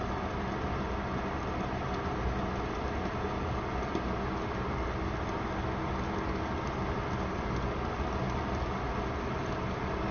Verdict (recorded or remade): recorded